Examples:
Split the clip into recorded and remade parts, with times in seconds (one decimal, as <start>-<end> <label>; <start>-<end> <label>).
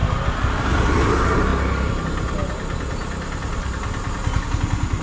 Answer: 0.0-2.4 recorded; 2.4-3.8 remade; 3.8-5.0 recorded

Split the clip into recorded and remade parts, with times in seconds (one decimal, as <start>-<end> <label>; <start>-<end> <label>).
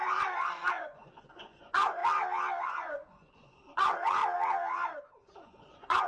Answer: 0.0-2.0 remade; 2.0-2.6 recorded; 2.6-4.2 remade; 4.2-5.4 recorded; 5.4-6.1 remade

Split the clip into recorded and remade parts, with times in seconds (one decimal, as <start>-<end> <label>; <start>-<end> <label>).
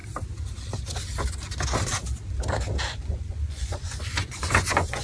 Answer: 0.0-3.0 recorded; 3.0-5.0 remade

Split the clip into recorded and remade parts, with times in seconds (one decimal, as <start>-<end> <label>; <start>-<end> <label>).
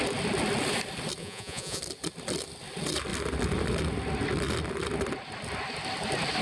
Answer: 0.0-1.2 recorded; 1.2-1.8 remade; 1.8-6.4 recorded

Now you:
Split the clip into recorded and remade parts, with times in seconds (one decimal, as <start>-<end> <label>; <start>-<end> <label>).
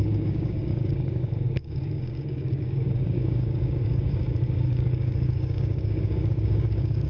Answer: 0.0-7.1 remade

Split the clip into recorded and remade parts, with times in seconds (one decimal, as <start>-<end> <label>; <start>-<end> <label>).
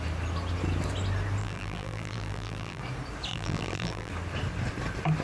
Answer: 0.0-1.4 recorded; 1.4-2.8 remade; 2.8-3.3 recorded; 3.3-4.1 remade; 4.1-5.2 recorded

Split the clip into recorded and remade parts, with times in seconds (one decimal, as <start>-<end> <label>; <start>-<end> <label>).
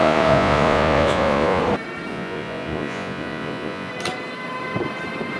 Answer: 0.0-1.6 remade; 1.6-2.1 recorded; 2.1-3.9 remade; 3.9-5.4 recorded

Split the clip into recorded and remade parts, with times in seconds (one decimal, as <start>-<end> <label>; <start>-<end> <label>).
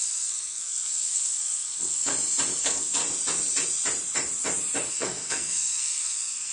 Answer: 0.0-2.1 remade; 2.1-2.6 recorded; 2.6-3.0 remade; 3.0-4.9 recorded; 4.9-6.5 remade